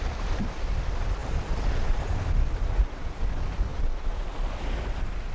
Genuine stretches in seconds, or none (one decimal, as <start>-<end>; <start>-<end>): 0.0-5.3